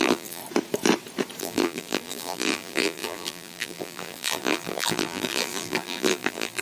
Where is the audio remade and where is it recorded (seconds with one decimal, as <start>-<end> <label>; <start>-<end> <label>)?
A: 0.0-0.4 remade; 0.4-1.4 recorded; 1.4-6.6 remade

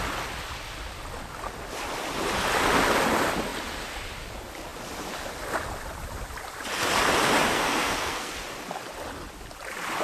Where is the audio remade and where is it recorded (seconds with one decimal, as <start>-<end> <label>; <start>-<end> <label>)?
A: 0.0-7.5 recorded; 7.5-8.3 remade; 8.3-10.0 recorded

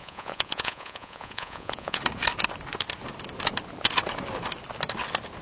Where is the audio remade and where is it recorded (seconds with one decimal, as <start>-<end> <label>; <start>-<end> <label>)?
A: 0.0-2.0 remade; 2.0-5.4 recorded

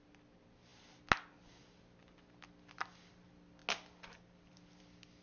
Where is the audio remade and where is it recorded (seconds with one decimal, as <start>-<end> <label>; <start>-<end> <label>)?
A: 0.0-5.2 recorded

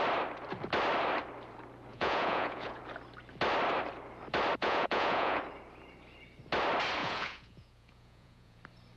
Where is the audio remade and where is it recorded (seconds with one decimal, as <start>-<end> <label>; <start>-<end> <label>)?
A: 0.0-1.9 recorded; 1.9-2.8 remade; 2.8-4.6 recorded; 4.6-5.4 remade; 5.4-7.0 recorded; 7.0-8.6 remade; 8.6-9.0 recorded

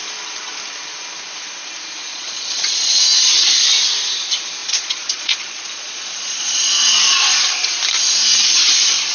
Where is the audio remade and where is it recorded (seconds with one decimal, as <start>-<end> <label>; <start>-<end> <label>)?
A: 0.0-2.1 recorded; 2.1-3.0 remade; 3.0-4.6 recorded; 4.6-6.7 remade; 6.7-9.1 recorded

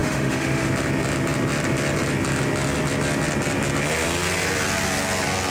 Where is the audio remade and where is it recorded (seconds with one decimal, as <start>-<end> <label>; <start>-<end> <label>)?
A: 0.0-0.7 remade; 0.7-5.5 recorded

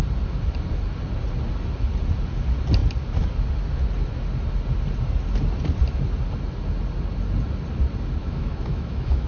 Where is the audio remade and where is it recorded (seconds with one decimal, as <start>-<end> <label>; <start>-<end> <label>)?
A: 0.0-8.2 recorded; 8.2-9.3 remade